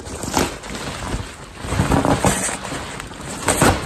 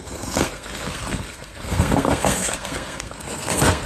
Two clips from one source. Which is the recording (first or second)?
first